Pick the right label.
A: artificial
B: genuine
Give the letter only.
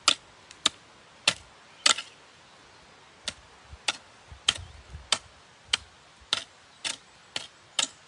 B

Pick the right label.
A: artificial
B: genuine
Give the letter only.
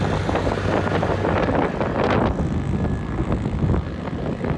B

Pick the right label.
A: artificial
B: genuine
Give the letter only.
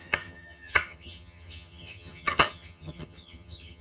A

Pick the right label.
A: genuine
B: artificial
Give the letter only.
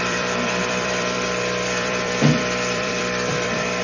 B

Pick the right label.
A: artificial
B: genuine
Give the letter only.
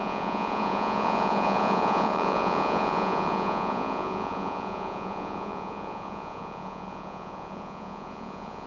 A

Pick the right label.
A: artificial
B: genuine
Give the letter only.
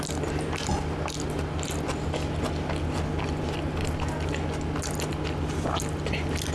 B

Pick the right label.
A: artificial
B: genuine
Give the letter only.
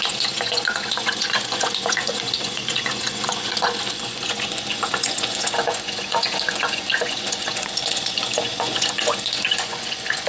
A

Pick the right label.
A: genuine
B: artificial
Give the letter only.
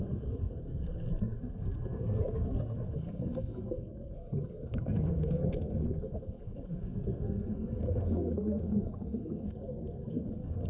B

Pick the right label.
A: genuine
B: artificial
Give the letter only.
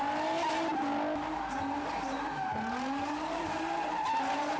A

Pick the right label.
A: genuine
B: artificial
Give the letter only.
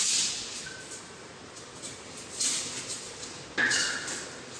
A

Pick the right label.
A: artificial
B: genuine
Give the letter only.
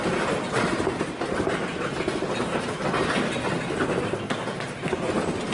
B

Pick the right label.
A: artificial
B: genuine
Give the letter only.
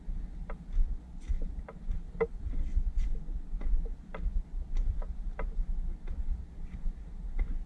B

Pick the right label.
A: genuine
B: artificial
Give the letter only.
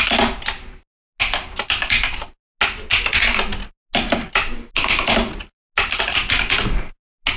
A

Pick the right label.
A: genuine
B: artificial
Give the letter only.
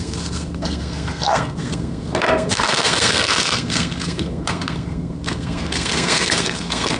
B